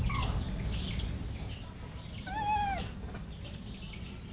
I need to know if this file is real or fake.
real